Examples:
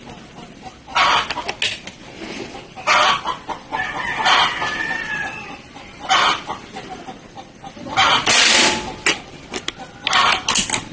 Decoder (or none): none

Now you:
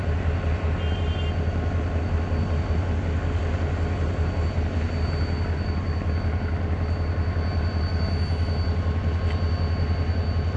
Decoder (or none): none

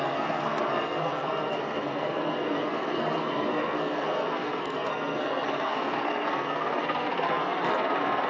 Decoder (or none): codec, SNAC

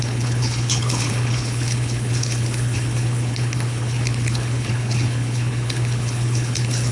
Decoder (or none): codec, HILCodec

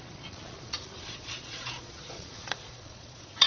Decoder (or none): vocoder, Vocos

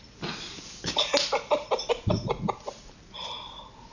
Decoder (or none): none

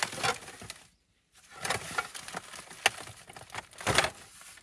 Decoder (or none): none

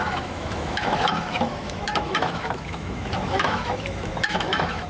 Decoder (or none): autoencoder, DAC-VAE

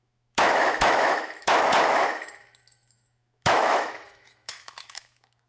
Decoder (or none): autoencoder, DAC-VAE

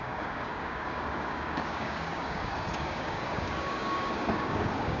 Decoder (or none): codec, DAC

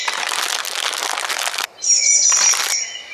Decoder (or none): none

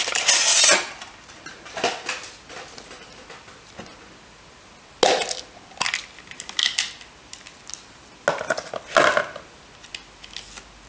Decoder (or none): none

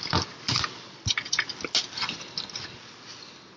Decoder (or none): none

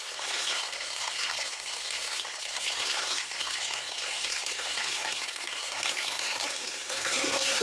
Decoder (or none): codec, SNAC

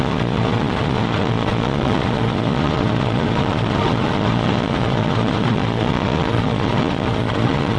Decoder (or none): vocoder, Vocos